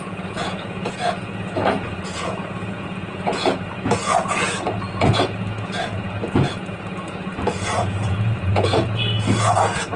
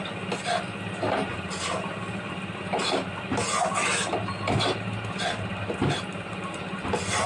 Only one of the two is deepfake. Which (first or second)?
first